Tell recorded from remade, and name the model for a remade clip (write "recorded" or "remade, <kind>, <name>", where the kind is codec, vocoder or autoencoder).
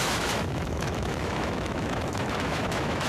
remade, autoencoder, DAC-VAE